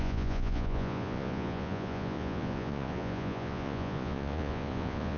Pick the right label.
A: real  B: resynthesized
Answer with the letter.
B